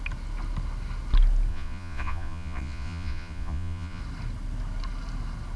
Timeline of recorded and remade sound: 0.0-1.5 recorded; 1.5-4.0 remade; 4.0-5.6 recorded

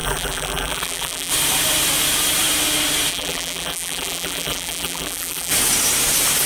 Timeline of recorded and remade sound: 0.0-1.3 remade; 1.3-3.1 recorded; 3.1-5.5 remade; 5.5-6.5 recorded

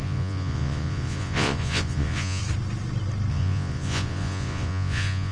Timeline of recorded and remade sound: 0.0-2.4 remade; 2.4-3.3 recorded; 3.3-5.3 remade